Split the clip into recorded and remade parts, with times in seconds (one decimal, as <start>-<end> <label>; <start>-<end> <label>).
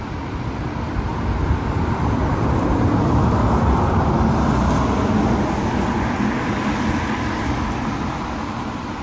0.0-9.0 recorded